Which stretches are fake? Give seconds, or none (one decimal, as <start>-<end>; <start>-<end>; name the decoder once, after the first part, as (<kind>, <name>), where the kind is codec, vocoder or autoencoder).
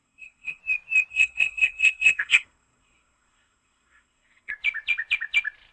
0.0-0.6 (codec, SNAC); 1.1-4.5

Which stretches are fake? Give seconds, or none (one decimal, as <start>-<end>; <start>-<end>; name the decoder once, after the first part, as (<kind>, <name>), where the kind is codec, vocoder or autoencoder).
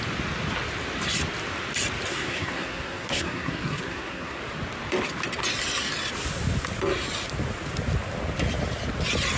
2.1-4.4 (codec, SNAC)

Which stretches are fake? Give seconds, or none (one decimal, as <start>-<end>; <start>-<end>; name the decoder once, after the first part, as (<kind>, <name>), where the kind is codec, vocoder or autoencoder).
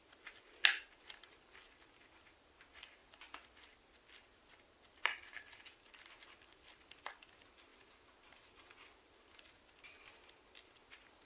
none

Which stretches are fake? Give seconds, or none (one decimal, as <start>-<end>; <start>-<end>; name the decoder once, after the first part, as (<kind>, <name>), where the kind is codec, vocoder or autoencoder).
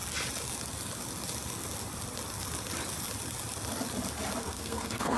4.4-5.2 (codec, SNAC)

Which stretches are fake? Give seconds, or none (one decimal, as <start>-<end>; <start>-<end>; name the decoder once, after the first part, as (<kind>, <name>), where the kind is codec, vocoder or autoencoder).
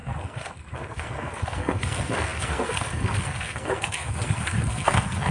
0.0-5.3 (codec, SNAC)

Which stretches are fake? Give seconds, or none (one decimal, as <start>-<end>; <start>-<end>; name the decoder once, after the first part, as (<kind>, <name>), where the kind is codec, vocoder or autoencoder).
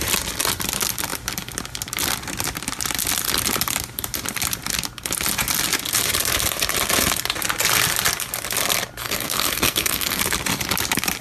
9.0-10.2 (codec, SNAC)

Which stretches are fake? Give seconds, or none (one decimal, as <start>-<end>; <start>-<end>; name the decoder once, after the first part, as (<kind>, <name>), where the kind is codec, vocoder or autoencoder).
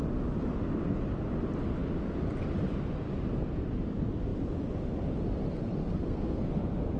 5.8-6.5 (codec, SNAC)